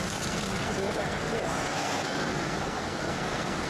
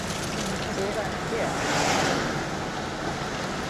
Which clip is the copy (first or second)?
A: first